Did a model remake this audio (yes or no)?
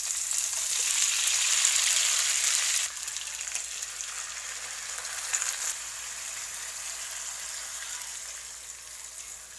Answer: no